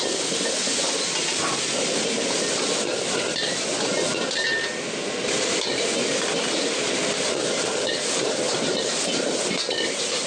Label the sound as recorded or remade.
recorded